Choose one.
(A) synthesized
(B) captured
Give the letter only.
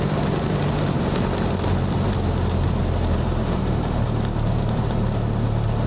A